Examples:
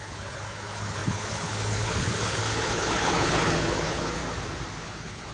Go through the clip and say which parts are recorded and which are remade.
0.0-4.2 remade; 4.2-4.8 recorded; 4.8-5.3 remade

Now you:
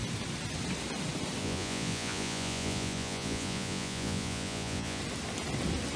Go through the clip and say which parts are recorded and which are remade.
0.0-1.4 recorded; 1.4-5.0 remade; 5.0-6.0 recorded

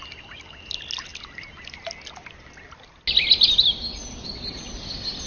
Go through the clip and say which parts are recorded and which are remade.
0.0-5.3 recorded